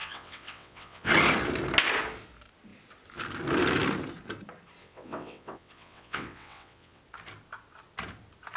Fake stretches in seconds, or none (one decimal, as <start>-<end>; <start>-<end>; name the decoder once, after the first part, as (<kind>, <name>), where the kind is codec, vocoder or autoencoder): 0.0-1.1 (vocoder, WaveNeXt); 4.8-7.0